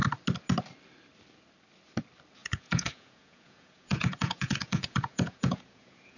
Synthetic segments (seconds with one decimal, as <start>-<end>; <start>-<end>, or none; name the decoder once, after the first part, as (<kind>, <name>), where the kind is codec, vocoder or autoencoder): 2.4-6.2 (vocoder, Vocos)